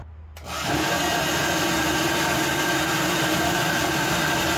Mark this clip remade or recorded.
recorded